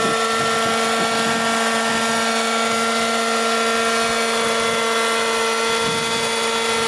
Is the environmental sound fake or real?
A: real